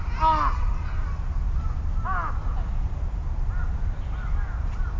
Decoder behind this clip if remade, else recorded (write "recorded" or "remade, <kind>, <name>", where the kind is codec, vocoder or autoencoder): recorded